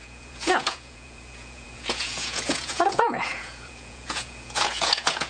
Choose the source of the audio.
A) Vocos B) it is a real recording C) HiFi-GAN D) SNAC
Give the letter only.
A